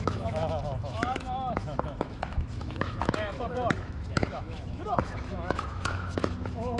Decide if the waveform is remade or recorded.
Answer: remade